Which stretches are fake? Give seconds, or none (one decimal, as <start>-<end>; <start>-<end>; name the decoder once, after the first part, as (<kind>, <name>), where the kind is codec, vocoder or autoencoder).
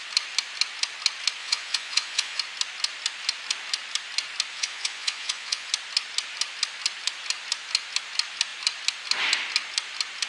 1.4-2.4 (vocoder, Vocos); 4.5-5.7